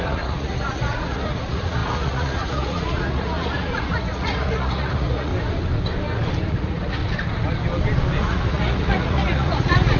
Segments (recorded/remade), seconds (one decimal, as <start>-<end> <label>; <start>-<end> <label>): 0.0-5.3 remade; 5.3-6.5 recorded; 6.5-7.0 remade; 7.0-8.2 recorded; 8.2-10.0 remade